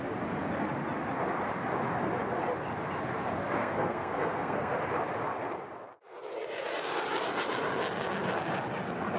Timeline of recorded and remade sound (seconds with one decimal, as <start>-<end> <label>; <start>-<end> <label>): 0.0-3.6 recorded; 3.6-4.7 remade; 4.7-9.2 recorded